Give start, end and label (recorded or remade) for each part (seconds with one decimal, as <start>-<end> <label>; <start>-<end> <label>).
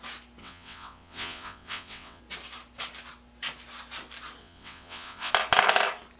0.0-0.4 recorded; 0.4-2.2 remade; 2.2-4.4 recorded; 4.4-5.3 remade; 5.3-6.2 recorded